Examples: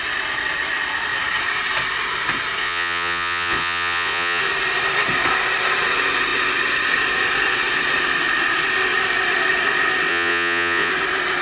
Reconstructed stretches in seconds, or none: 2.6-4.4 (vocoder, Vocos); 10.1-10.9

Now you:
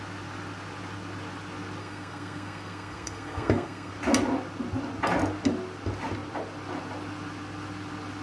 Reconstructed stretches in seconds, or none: 1.8-3.9 (codec, SNAC)

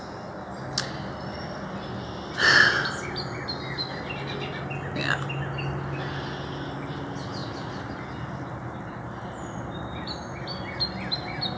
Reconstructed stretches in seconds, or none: none

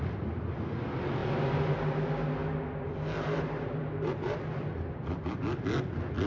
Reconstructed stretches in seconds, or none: none

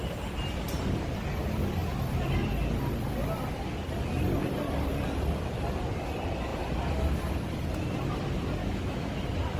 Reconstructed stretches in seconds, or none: 8.6-9.2 (autoencoder, DAC-VAE)